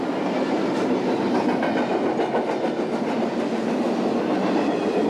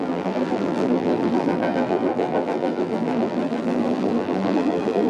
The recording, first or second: first